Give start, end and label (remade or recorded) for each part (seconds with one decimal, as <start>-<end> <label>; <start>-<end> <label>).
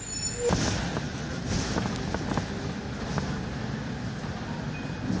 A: 0.0-5.2 recorded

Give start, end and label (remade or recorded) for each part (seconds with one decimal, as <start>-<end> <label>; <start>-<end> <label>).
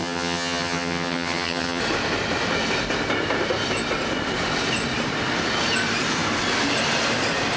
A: 0.0-1.8 remade; 1.8-7.6 recorded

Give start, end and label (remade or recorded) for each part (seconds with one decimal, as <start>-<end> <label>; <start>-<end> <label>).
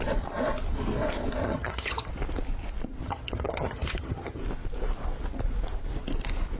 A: 0.0-1.4 recorded; 1.4-2.1 remade; 2.1-3.0 recorded; 3.0-4.4 remade; 4.4-6.6 recorded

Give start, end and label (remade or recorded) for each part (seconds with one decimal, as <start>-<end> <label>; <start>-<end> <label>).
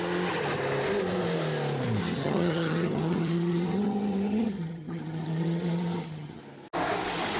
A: 0.0-2.0 recorded; 2.0-6.4 remade; 6.4-7.4 recorded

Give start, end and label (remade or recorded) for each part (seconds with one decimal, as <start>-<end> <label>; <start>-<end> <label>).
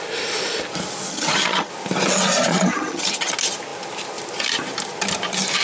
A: 0.0-1.1 recorded; 1.1-1.7 remade; 1.7-2.5 recorded; 2.5-3.3 remade; 3.3-5.6 recorded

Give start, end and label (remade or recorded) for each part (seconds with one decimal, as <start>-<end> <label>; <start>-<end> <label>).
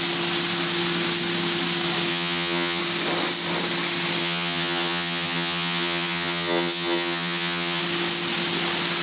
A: 0.0-2.1 recorded; 2.1-2.8 remade; 2.8-4.2 recorded; 4.2-7.8 remade; 7.8-9.0 recorded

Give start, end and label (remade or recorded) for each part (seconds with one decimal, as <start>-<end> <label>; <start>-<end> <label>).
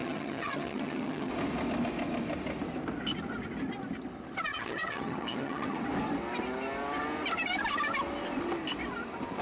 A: 0.0-1.3 remade; 1.3-4.5 recorded; 4.5-5.8 remade; 5.8-9.4 recorded